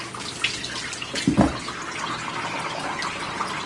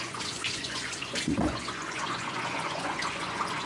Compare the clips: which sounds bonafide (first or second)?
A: first